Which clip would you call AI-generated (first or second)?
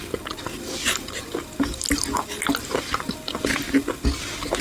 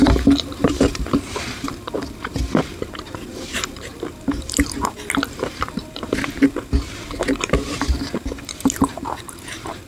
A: second